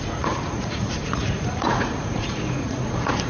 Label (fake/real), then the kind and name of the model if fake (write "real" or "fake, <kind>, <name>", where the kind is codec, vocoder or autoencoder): fake, vocoder, Vocos